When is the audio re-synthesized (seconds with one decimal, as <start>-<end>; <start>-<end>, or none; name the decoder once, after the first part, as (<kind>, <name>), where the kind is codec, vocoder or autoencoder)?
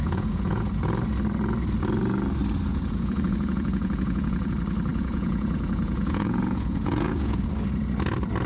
0.0-0.7 (vocoder, Vocos); 2.7-4.5; 4.9-7.4